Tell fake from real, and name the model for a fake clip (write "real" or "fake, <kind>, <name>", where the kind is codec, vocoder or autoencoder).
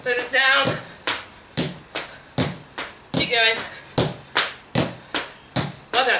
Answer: real